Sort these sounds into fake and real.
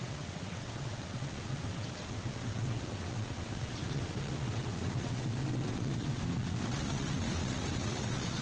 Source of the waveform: fake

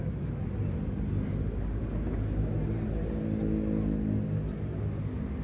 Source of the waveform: real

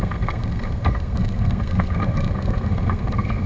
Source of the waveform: fake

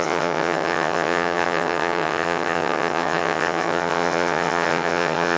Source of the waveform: fake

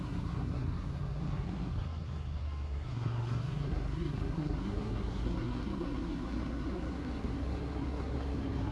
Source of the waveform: fake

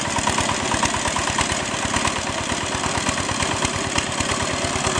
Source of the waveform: fake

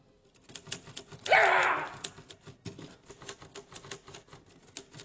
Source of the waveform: real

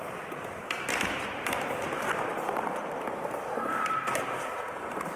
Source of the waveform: real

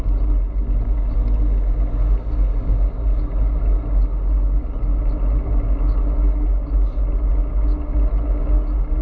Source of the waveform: real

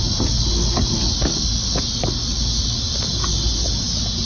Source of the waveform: real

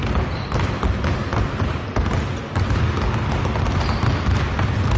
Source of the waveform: real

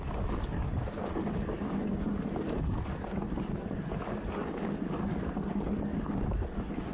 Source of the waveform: real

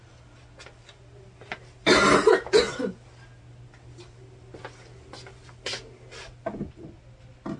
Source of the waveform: real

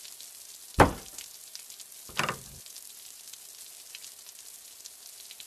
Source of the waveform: real